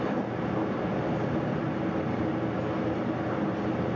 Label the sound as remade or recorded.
recorded